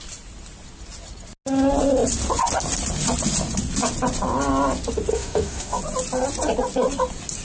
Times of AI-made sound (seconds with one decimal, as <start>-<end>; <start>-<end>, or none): 5.1-5.8